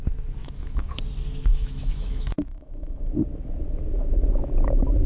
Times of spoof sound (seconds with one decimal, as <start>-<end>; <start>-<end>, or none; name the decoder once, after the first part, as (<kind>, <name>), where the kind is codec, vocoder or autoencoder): 0.4-0.9 (autoencoder, DAC-VAE); 1.5-3.0